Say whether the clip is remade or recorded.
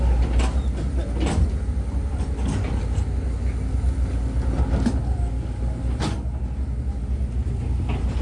recorded